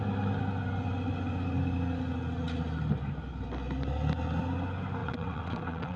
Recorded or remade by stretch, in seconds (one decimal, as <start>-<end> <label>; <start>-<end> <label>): 0.0-5.0 recorded; 5.0-6.0 remade